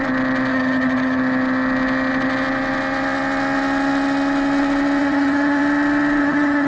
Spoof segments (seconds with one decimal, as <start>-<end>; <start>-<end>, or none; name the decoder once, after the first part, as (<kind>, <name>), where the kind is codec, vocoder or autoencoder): 0.5-1.2 (vocoder, HiFi-GAN); 5.0-5.6; 6.2-6.7